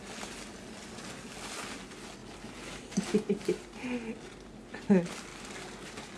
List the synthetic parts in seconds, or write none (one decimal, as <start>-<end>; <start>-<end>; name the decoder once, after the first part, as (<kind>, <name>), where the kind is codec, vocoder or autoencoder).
none